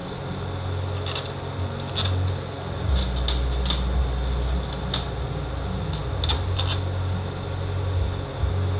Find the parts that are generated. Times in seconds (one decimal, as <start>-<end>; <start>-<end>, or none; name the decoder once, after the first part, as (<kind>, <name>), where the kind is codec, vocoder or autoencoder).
none